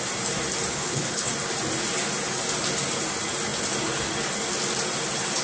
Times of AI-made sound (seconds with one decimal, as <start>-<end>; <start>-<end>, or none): 0.7-1.3